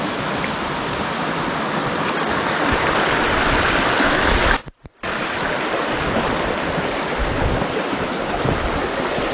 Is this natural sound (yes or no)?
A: no